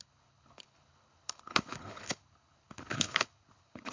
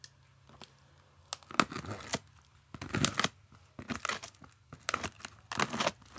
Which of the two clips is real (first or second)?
second